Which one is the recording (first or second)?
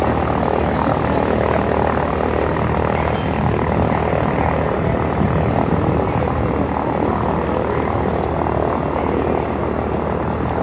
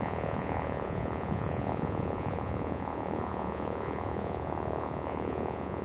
first